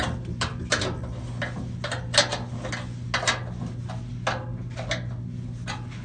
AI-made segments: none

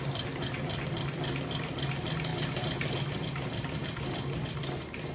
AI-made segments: none

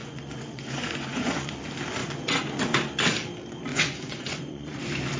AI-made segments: 0.0-1.6 (vocoder, Vocos); 2.0-2.6; 3.7-4.8

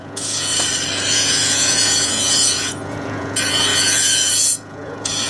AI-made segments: 0.0-0.5 (vocoder, Vocos); 1.1-5.3

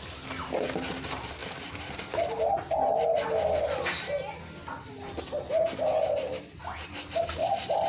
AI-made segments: none

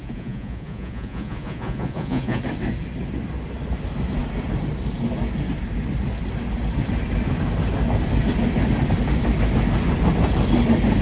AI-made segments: 0.0-2.4 (vocoder, Vocos)